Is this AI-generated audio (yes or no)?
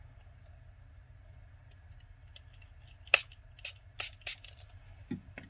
no